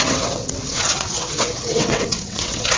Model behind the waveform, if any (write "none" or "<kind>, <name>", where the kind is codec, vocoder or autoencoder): vocoder, WaveNeXt